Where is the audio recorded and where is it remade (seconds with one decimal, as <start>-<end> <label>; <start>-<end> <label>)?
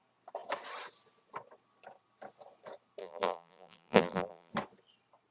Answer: 0.0-3.0 recorded; 3.0-4.5 remade; 4.5-5.3 recorded